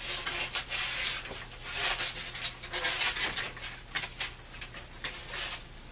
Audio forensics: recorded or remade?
recorded